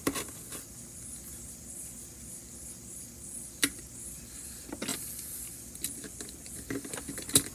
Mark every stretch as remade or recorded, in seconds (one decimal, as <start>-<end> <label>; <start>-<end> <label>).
0.0-4.9 recorded; 4.9-5.8 remade; 5.8-7.5 recorded

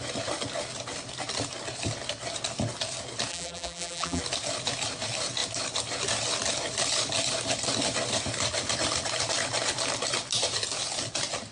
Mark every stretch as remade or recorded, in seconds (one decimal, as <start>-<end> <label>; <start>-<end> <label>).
0.0-3.3 recorded; 3.3-4.2 remade; 4.2-11.5 recorded

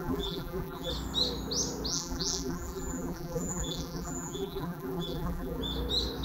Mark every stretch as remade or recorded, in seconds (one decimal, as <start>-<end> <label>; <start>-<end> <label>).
0.0-0.9 remade; 0.9-1.9 recorded; 1.9-5.6 remade; 5.6-6.2 recorded

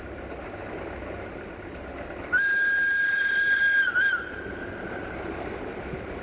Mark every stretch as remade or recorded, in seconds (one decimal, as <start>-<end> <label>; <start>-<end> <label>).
0.0-3.1 recorded; 3.1-3.6 remade; 3.6-6.2 recorded

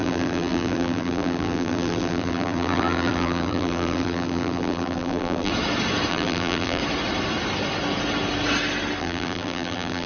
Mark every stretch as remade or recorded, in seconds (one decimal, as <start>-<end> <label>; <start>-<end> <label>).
0.0-5.5 remade; 5.5-6.1 recorded; 6.1-6.8 remade; 6.8-9.0 recorded; 9.0-10.1 remade

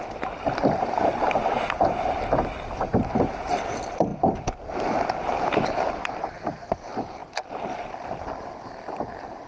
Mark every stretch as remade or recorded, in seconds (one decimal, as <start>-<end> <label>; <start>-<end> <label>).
0.0-9.5 recorded

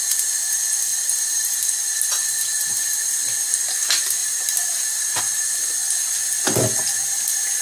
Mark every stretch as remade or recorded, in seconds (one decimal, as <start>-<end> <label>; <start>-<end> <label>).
0.0-0.9 recorded; 0.9-2.9 remade; 2.9-4.2 recorded; 4.2-5.2 remade; 5.2-7.6 recorded

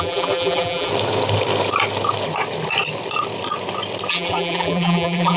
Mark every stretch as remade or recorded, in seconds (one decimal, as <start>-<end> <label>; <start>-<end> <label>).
0.0-0.9 remade; 0.9-4.1 recorded; 4.1-5.4 remade